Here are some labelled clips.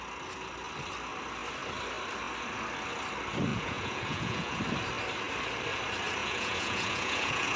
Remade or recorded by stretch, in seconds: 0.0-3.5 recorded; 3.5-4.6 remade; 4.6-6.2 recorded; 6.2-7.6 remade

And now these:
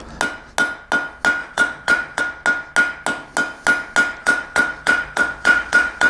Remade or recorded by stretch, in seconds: 0.0-1.4 recorded; 1.4-2.2 remade; 2.2-4.2 recorded; 4.2-6.1 remade

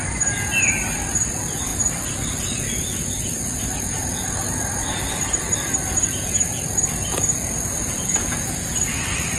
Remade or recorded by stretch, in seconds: 0.0-7.7 recorded; 7.7-8.9 remade; 8.9-9.4 recorded